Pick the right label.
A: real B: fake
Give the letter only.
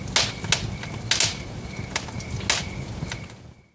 A